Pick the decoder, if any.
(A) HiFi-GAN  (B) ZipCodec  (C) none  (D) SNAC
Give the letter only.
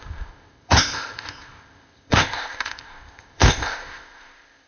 B